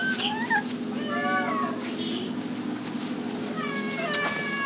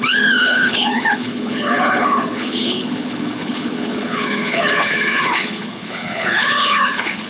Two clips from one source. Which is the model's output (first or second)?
second